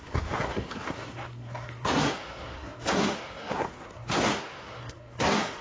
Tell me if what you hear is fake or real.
fake